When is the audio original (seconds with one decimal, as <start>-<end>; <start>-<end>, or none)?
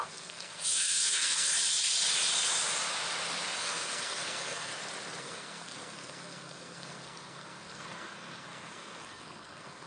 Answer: 1.5-3.6; 4.7-5.2